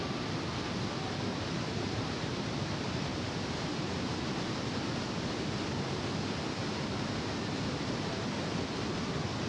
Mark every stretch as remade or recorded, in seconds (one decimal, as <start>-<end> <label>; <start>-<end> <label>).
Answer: 0.0-1.3 recorded; 1.3-2.5 remade; 2.5-9.5 recorded